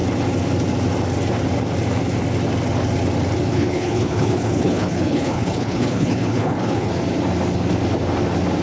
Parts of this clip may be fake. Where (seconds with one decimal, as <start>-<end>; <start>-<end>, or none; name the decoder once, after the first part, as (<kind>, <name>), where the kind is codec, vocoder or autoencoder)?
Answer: 3.5-6.9 (codec, HILCodec)